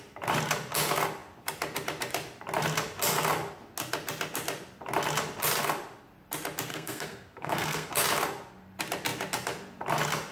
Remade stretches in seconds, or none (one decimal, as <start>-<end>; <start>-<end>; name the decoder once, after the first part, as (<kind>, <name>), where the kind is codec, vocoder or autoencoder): 6.7-7.9 (codec, SNAC)